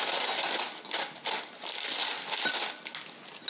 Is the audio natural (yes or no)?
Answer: yes